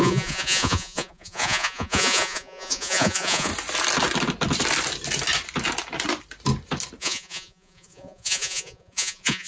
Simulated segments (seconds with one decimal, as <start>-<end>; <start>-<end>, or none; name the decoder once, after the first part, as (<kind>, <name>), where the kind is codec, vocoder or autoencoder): 0.0-3.5 (vocoder, Vocos); 7.0-9.5